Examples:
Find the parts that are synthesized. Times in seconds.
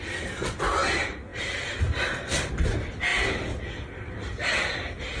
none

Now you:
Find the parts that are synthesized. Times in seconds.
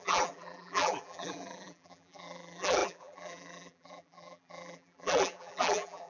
0.0-6.1 (vocoder, BigVGAN v2)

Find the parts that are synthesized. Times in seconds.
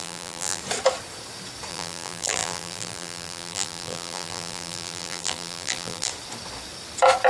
0.0-0.6 (vocoder, BigVGAN v2); 1.7-6.1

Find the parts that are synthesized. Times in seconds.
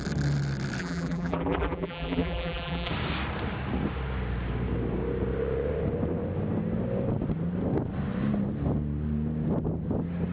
0.8-2.9 (vocoder, BigVGAN v2)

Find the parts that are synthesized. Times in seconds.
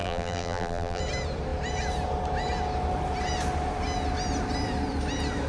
0.0-1.0 (vocoder, BigVGAN v2)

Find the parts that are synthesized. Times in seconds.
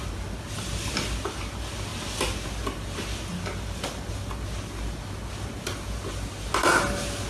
none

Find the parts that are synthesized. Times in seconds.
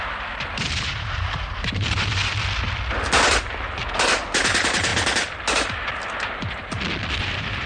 0.0-2.2 (vocoder, BigVGAN v2); 3.4-4.9; 7.2-7.7